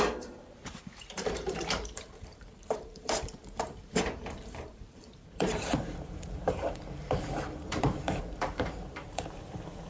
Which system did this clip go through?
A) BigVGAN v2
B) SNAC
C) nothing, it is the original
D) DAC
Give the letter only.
A